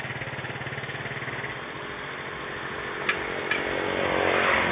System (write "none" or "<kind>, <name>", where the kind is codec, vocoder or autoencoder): none